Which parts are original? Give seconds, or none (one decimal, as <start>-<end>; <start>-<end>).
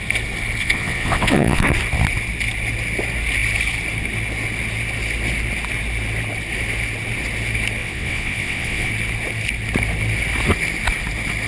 0.0-0.6; 1.7-7.8; 8.9-11.5